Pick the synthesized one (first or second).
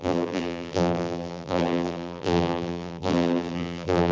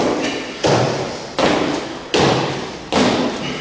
first